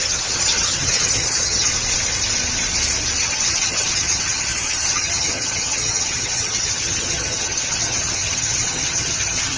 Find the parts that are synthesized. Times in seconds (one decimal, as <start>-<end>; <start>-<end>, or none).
0.0-1.7; 3.2-9.6